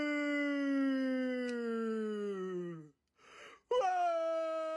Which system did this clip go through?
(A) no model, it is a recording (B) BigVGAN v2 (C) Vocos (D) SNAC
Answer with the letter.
A